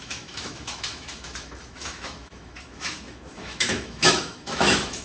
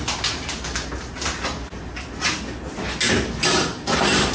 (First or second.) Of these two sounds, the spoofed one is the first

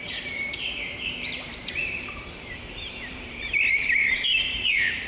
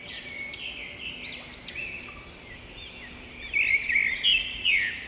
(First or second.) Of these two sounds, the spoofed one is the first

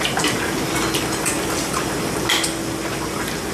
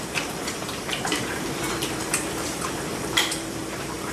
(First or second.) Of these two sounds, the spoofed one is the second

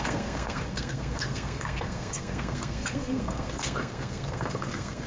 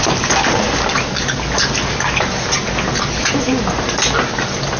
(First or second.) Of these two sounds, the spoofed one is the first